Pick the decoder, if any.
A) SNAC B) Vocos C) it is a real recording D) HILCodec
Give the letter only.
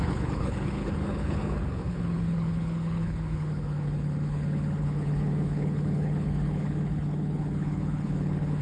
D